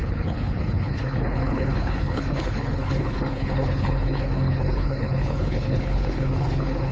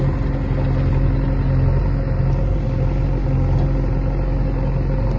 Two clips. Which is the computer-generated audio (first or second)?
first